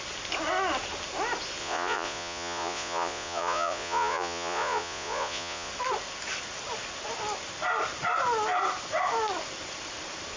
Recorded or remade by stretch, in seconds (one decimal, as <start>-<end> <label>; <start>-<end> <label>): 0.0-1.6 recorded; 1.6-5.7 remade; 5.7-10.4 recorded